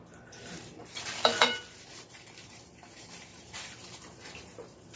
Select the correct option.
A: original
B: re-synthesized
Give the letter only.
B